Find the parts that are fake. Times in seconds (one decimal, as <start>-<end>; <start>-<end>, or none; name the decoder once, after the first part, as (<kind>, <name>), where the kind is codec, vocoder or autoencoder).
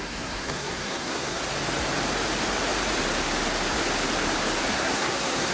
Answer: 0.0-1.4 (codec, SNAC); 4.7-5.5